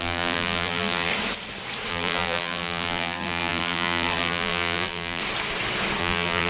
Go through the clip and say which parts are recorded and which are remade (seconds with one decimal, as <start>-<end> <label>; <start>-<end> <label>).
0.0-1.1 remade; 1.1-1.9 recorded; 1.9-5.2 remade; 5.2-6.0 recorded; 6.0-6.5 remade